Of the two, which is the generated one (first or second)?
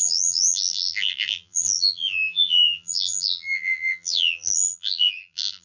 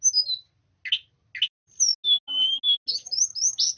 first